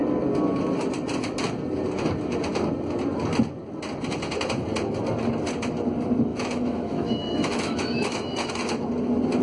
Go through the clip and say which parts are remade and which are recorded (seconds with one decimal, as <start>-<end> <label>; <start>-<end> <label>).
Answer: 0.0-6.3 recorded; 6.3-8.5 remade; 8.5-9.4 recorded